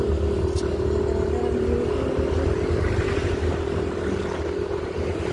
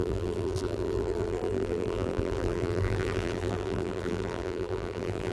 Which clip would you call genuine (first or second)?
first